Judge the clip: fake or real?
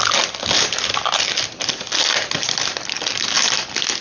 real